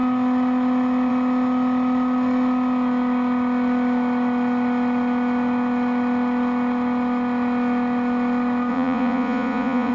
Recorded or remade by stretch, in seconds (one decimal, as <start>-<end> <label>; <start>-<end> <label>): 0.0-8.7 recorded; 8.7-9.9 remade